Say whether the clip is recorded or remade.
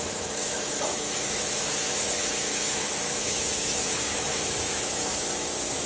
remade